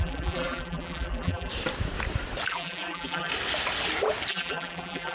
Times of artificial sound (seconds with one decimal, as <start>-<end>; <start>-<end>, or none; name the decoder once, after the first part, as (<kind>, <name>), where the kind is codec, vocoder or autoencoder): 0.0-1.5 (vocoder, BigVGAN v2); 2.5-3.3; 4.3-5.1